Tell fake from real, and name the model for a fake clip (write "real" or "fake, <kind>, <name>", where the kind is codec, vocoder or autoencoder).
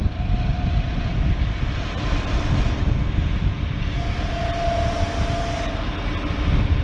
real